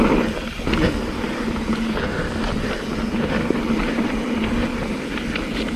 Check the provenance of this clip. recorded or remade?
recorded